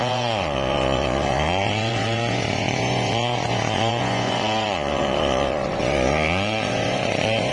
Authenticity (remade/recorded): remade